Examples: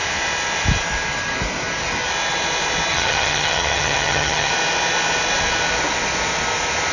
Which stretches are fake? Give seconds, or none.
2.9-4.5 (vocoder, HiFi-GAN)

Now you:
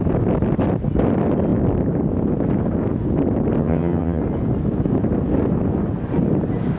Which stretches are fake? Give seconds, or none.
3.6-4.2 (vocoder, HiFi-GAN)

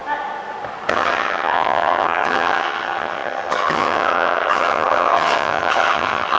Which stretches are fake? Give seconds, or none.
0.9-6.4 (vocoder, HiFi-GAN)

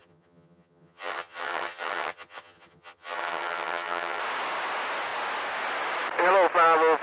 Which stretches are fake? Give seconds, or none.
0.0-4.2 (vocoder, HiFi-GAN)

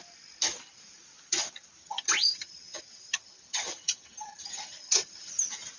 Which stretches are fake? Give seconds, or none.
1.8-5.3 (vocoder, HiFi-GAN)

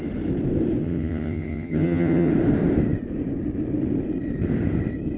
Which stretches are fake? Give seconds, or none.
0.8-2.3 (vocoder, HiFi-GAN)

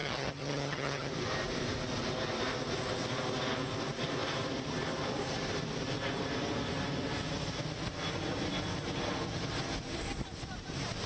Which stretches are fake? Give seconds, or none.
0.0-1.1 (vocoder, HiFi-GAN)